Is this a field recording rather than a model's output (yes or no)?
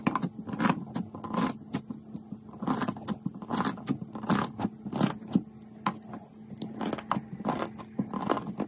yes